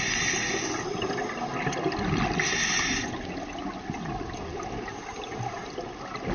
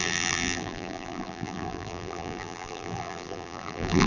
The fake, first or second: second